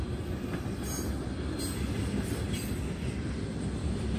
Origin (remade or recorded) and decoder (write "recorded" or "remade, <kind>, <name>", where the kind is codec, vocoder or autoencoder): recorded